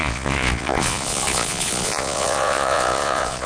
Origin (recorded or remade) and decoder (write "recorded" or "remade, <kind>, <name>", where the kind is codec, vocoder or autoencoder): remade, vocoder, Vocos